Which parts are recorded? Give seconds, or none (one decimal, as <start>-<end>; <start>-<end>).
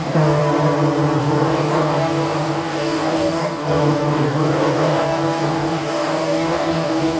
0.4-1.2